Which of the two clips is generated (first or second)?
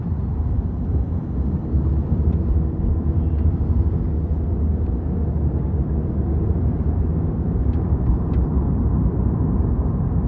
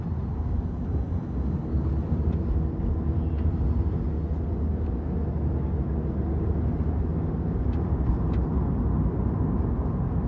first